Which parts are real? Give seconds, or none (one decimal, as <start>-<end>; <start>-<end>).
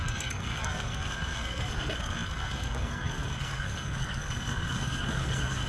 none